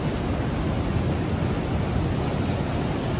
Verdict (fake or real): real